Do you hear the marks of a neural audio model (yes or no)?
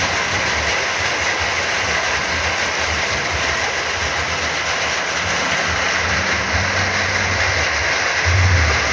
no